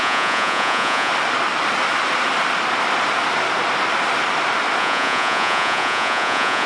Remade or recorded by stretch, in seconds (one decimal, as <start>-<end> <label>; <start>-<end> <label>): 0.0-1.1 remade; 1.1-4.8 recorded; 4.8-6.7 remade